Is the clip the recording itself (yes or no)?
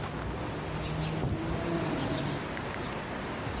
yes